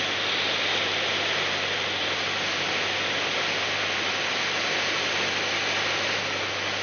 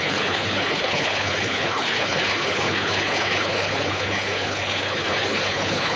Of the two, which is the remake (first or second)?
second